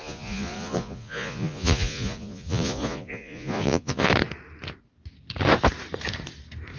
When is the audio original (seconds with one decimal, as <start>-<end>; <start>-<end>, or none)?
4.1-6.8